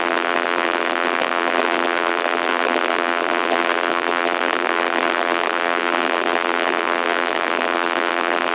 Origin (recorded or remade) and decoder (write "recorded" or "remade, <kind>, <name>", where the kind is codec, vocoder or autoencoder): remade, vocoder, BigVGAN v2